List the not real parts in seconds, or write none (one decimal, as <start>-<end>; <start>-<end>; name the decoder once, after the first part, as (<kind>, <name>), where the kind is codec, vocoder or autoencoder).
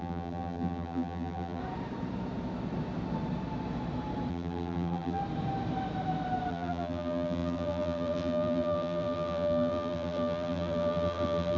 0.0-1.6 (vocoder, BigVGAN v2); 4.3-5.2; 6.5-11.6